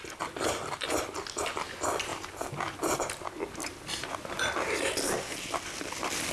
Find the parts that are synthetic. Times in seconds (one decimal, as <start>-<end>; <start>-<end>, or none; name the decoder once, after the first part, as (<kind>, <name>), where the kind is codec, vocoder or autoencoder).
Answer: none